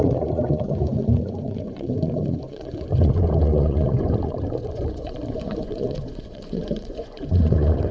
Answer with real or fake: fake